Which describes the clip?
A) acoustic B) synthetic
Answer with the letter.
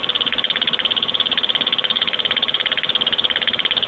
A